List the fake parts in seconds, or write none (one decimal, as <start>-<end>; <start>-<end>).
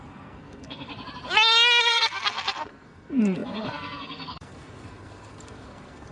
0.0-0.9; 1.8-6.1